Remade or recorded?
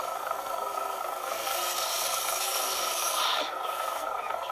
remade